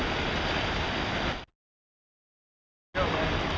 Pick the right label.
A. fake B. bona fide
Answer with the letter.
B